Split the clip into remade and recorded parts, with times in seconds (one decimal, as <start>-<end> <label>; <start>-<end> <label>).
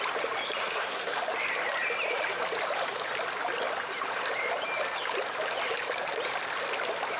0.0-0.6 recorded; 0.6-1.1 remade; 1.1-7.2 recorded